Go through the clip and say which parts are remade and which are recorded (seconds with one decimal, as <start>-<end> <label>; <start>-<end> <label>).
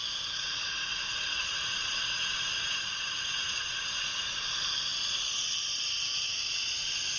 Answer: 0.0-4.3 remade; 4.3-7.2 recorded